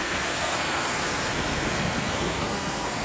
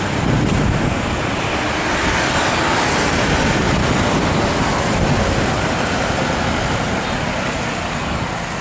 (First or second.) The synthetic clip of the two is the first